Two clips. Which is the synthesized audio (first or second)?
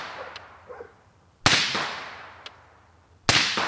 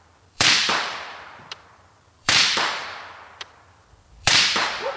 second